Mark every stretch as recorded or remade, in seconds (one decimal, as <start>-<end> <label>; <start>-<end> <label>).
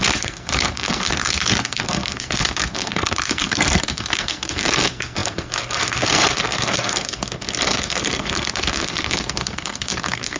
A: 0.0-10.4 remade